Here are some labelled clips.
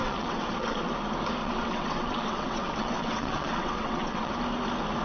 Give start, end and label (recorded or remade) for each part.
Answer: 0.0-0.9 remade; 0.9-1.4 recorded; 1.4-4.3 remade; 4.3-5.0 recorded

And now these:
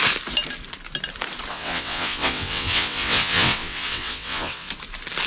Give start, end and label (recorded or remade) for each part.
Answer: 0.0-1.5 recorded; 1.5-4.7 remade; 4.7-5.3 recorded

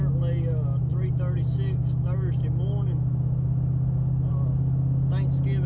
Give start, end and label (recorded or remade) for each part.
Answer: 0.0-5.7 recorded

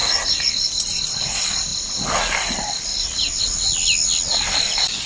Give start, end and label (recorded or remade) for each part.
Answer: 0.0-5.1 recorded